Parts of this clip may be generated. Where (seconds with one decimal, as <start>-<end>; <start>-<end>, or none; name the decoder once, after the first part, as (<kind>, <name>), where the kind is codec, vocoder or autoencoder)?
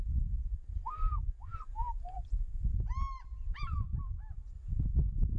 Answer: none